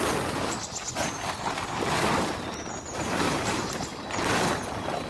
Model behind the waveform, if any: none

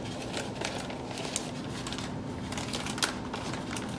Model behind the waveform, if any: none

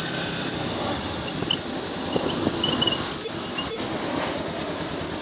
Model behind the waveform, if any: none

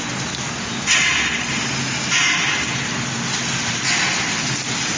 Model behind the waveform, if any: none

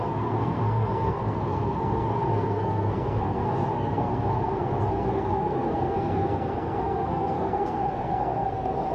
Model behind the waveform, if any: codec, SNAC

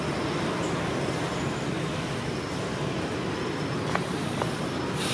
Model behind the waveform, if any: none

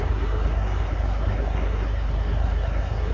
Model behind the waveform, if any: codec, SNAC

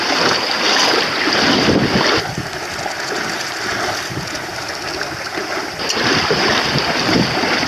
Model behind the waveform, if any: none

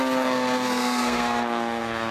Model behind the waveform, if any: codec, SNAC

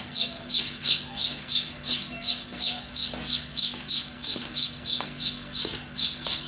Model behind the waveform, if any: codec, SNAC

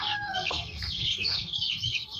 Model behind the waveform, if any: codec, SNAC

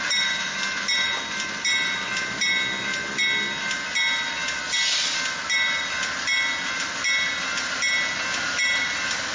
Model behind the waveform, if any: none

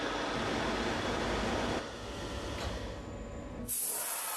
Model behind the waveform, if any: none